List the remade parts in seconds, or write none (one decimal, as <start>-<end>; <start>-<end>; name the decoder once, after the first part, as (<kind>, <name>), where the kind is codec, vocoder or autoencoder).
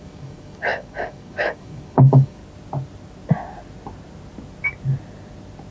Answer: 0.0-2.4 (codec, DAC)